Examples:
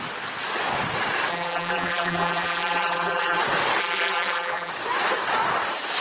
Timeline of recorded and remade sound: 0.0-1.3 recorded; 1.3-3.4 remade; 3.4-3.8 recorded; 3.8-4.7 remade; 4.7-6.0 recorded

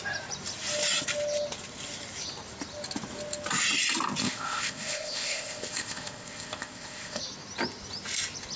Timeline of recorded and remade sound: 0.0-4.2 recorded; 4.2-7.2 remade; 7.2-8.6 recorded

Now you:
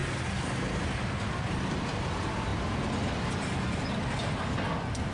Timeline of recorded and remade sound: 0.0-5.1 recorded

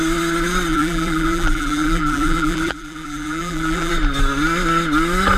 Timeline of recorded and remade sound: 0.0-0.7 recorded; 0.7-3.9 remade; 3.9-5.4 recorded